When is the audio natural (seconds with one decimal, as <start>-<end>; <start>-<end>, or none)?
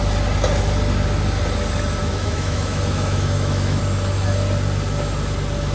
0.0-2.0; 3.8-5.7